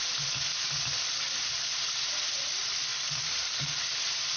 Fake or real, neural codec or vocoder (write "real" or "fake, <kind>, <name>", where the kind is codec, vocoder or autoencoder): real